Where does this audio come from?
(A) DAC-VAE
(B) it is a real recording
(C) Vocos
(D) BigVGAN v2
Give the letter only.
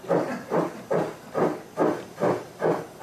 B